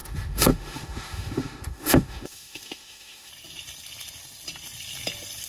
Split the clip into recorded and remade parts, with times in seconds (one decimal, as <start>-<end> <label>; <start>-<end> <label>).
0.0-3.3 remade; 3.3-5.5 recorded